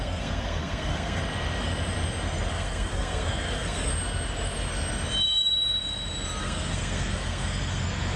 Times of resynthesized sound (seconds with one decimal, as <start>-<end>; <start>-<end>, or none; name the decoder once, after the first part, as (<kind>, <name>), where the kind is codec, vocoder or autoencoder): 0.0-1.2 (codec, SNAC); 2.5-3.9; 6.4-8.2